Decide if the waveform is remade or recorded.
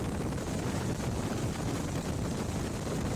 remade